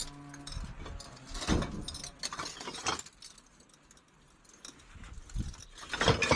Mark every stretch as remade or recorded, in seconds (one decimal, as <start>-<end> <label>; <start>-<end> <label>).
0.0-6.4 recorded